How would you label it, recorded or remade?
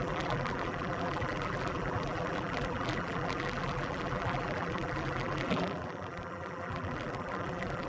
remade